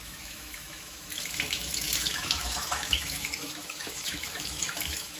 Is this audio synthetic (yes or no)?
yes